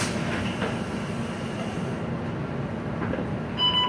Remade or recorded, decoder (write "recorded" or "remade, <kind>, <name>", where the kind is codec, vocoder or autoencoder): recorded